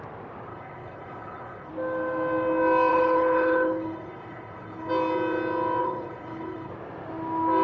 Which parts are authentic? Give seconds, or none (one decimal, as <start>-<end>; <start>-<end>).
0.0-0.5; 1.7-2.9; 4.9-5.8; 6.7-7.6

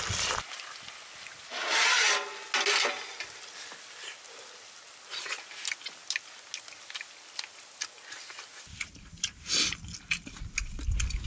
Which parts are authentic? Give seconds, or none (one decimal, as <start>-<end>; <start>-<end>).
0.0-11.3

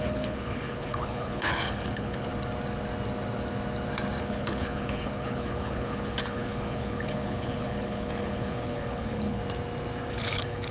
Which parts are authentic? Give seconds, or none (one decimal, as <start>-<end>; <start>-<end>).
2.3-4.2; 9.4-10.1

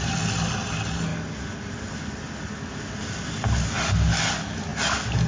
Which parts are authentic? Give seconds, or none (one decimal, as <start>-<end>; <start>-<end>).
0.0-5.3

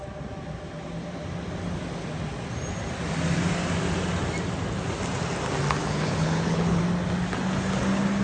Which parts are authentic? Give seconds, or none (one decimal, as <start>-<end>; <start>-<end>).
0.0-5.8; 6.8-8.2

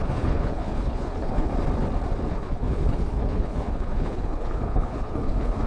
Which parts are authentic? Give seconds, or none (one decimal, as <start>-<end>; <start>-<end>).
1.5-2.3